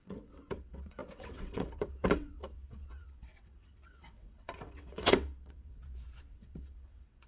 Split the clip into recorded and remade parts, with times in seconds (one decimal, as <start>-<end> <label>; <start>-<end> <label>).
0.0-5.8 remade; 5.8-6.3 recorded; 6.3-7.3 remade